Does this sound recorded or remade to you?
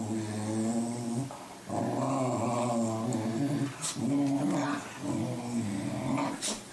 recorded